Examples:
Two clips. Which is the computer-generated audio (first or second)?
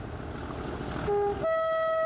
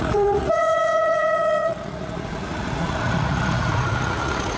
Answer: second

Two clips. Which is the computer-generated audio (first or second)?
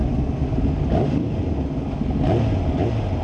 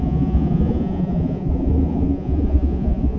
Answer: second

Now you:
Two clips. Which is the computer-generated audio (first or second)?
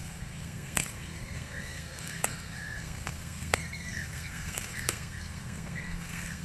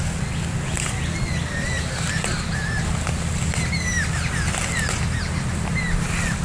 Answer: first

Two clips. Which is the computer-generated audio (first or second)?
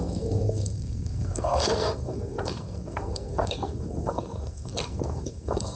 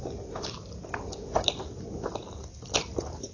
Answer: first